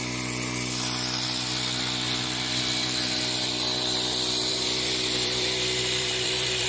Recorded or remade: remade